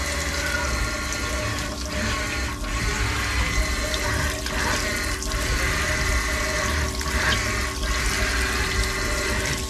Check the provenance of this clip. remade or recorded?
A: recorded